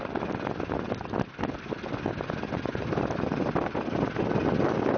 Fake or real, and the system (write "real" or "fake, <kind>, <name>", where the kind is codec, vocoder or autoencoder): real